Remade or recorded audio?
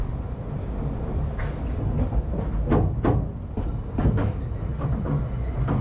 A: recorded